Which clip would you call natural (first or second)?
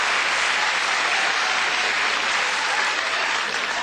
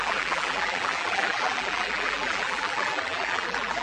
first